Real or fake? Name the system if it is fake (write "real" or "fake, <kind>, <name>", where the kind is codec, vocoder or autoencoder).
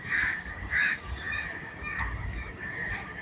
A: fake, codec, DAC